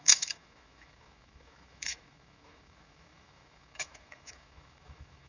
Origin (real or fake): fake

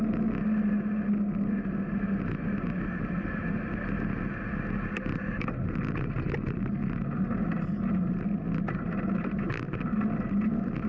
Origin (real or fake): real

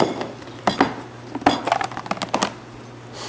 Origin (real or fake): real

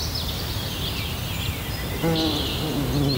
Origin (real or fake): real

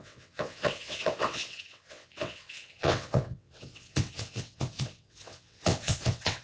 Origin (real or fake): fake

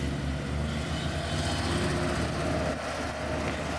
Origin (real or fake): real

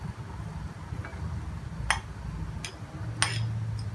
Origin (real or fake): real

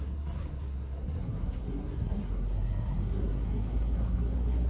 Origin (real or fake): fake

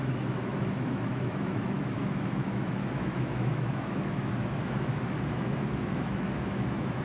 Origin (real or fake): fake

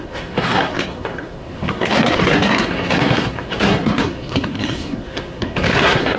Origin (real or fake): fake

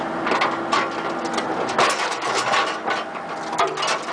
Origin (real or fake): real